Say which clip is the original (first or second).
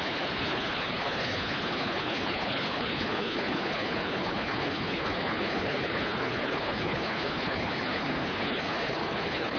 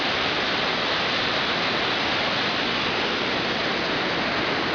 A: second